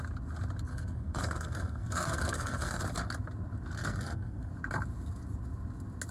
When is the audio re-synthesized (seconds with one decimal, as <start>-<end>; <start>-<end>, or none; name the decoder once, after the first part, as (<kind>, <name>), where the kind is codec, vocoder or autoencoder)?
0.7-2.8 (codec, SNAC); 3.8-4.5